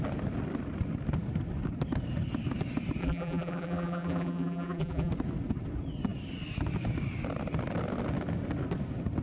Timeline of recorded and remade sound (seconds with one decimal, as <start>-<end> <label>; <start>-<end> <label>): 0.0-3.0 recorded; 3.0-5.1 remade; 5.1-9.2 recorded